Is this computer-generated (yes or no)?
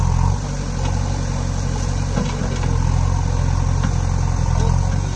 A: no